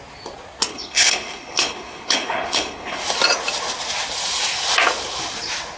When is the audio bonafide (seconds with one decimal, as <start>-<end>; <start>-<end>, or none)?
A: 0.0-0.7; 3.0-5.8